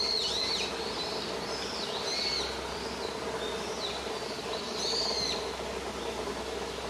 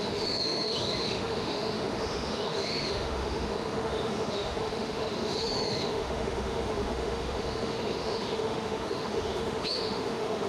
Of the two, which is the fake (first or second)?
second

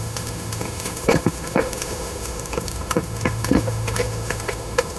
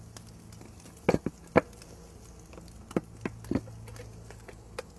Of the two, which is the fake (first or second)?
first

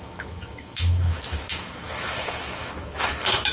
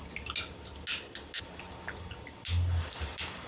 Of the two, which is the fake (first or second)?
first